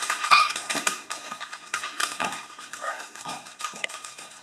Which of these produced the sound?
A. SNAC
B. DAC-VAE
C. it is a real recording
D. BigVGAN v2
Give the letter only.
A